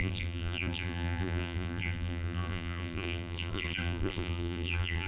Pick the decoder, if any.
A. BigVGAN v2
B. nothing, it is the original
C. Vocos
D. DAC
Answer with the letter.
A